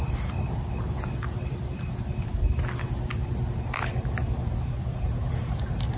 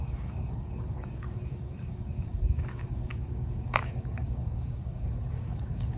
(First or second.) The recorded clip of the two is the first